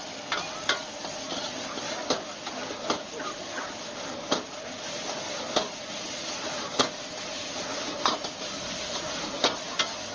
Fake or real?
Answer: real